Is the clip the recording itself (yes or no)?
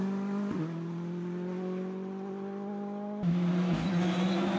yes